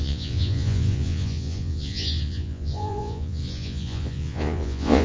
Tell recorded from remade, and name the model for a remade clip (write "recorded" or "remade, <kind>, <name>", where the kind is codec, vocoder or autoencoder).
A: remade, vocoder, Vocos